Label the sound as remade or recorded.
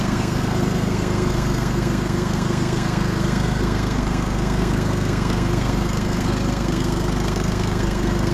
remade